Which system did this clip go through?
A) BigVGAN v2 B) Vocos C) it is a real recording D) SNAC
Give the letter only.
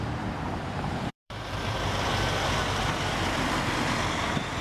A